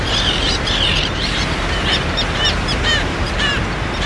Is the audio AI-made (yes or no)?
yes